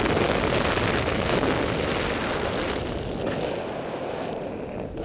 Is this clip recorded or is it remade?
recorded